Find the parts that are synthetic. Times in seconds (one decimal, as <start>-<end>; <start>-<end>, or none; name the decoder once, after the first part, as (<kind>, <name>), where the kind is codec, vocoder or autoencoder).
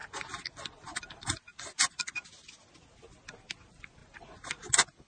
none